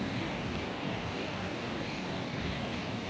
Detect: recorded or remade remade